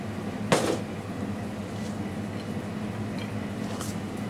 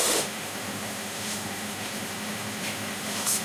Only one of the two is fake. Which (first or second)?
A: second